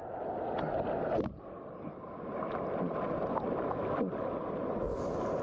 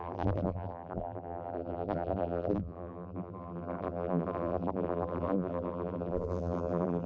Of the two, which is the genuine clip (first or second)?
first